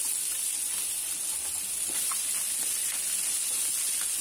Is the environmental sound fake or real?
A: real